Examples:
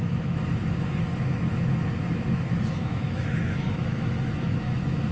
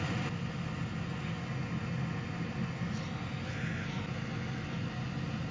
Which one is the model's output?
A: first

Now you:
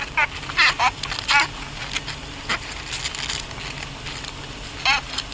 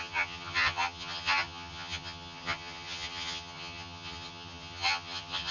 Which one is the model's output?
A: second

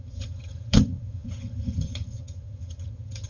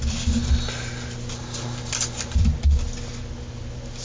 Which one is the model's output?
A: first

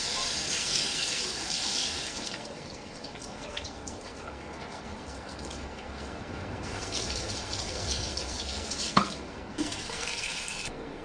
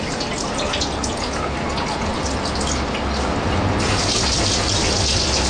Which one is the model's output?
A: first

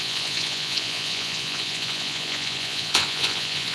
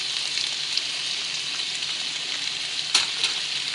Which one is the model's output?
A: first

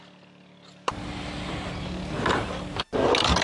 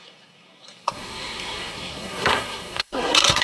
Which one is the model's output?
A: second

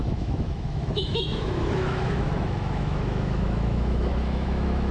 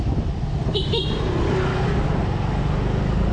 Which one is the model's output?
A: first